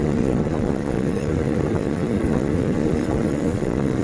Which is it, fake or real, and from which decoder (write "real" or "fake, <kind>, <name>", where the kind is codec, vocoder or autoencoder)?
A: fake, vocoder, Vocos